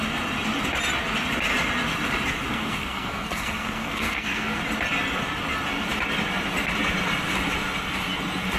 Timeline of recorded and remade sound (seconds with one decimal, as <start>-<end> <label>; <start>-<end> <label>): 0.0-2.5 recorded; 2.5-4.6 remade; 4.6-8.6 recorded